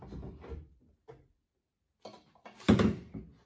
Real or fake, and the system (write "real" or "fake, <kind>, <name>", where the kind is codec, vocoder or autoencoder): real